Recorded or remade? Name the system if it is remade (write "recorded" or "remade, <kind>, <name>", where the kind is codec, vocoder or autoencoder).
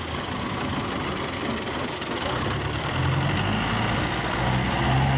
recorded